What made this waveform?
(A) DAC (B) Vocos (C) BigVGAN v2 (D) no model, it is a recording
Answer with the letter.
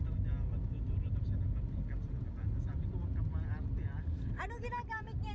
D